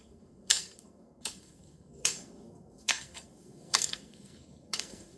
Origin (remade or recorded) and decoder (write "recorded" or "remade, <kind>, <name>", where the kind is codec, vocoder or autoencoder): remade, codec, SNAC